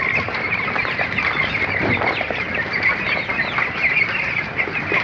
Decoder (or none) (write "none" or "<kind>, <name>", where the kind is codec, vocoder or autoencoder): none